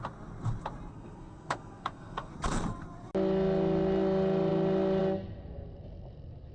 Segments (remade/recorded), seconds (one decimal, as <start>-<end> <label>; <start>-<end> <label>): 0.0-0.9 recorded; 0.9-2.3 remade; 2.3-6.5 recorded